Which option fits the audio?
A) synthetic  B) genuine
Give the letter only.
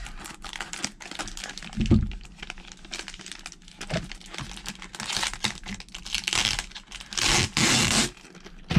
B